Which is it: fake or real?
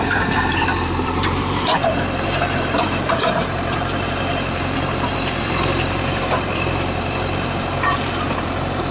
fake